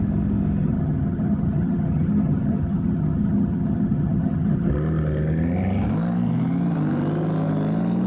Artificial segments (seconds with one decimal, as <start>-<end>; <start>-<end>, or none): 0.6-4.7